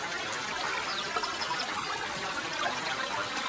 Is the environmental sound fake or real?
real